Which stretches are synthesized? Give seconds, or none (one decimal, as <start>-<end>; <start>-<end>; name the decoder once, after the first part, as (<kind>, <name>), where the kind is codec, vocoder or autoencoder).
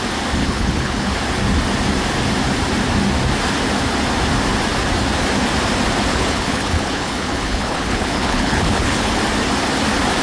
0.4-1.1 (codec, HILCodec); 6.1-9.1